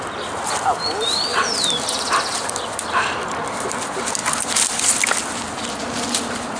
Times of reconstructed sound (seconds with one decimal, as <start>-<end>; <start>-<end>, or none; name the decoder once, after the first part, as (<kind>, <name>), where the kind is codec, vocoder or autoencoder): none